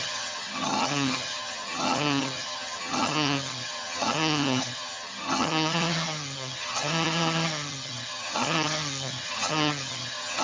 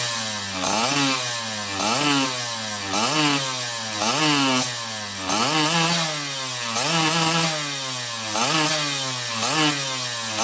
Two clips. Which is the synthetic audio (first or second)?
first